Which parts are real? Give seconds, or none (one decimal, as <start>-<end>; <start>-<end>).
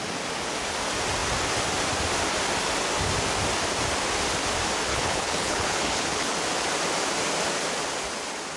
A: 0.0-4.9; 6.3-8.6